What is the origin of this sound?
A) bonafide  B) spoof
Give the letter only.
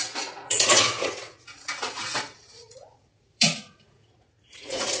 B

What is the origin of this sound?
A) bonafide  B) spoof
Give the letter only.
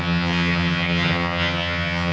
B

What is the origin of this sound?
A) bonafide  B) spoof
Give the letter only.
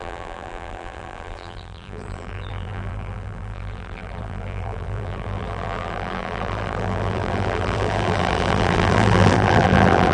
B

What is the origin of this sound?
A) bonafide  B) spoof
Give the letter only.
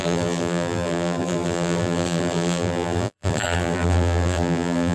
B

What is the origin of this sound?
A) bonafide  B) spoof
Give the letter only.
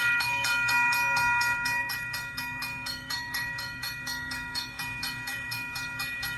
B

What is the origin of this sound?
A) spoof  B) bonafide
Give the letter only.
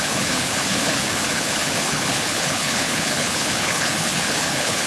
A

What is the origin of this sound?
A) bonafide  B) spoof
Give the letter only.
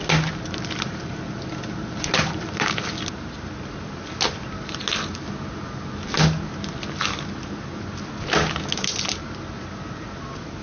A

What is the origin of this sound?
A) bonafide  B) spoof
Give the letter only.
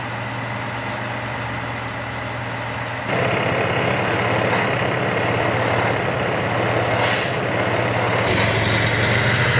A